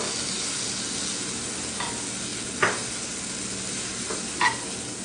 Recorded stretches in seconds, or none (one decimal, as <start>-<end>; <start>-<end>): 0.0-5.0